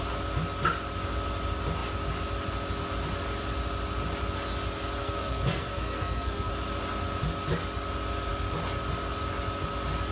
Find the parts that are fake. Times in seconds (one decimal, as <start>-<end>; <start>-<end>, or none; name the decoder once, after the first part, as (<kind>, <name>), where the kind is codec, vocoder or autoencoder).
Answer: 5.0-6.5 (codec, SNAC)